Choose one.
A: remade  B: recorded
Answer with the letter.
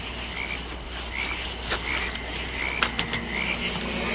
B